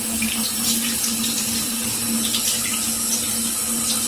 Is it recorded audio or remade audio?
recorded